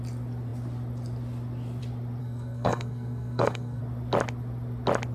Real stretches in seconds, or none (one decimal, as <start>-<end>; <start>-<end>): 0.0-2.2; 3.8-5.1